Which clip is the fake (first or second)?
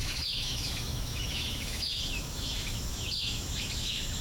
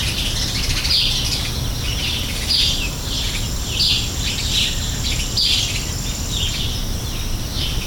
first